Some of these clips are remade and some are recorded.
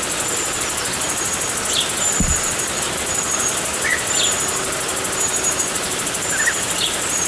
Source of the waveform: recorded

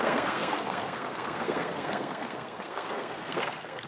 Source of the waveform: remade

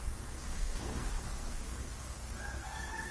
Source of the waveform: remade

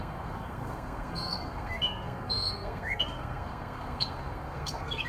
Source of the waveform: remade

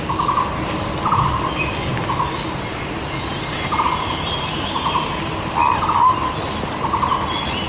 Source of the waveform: recorded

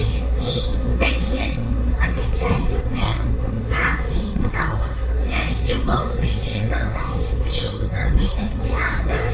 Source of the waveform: remade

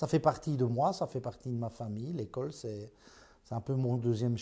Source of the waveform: recorded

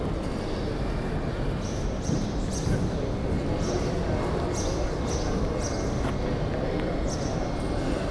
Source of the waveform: recorded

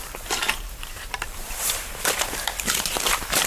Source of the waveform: remade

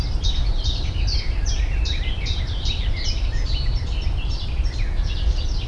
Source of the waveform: remade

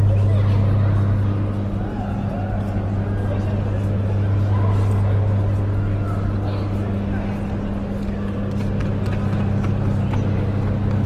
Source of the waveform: recorded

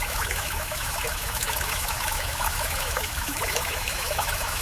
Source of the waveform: remade